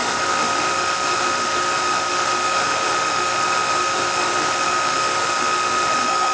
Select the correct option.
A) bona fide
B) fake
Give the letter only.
B